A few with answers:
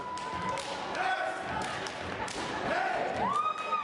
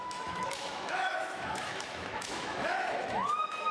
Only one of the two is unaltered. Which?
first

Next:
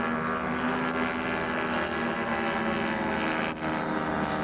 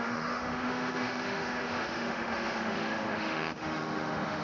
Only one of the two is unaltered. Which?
first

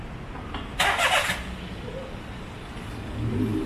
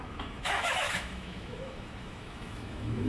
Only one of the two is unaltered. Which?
first